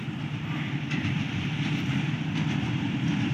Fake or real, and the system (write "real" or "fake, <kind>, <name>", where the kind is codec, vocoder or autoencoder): fake, vocoder, BigVGAN v2